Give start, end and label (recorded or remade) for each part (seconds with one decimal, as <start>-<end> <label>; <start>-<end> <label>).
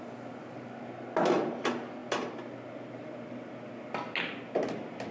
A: 0.0-5.1 recorded